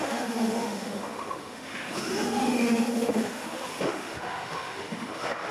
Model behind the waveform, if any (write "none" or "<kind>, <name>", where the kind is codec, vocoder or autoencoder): autoencoder, DAC-VAE